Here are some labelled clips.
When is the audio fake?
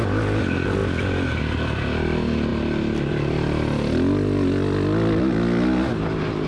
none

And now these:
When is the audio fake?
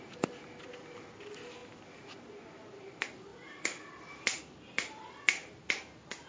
none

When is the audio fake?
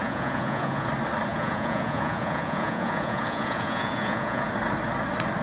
0.0-0.9 (vocoder, Vocos); 1.3-4.5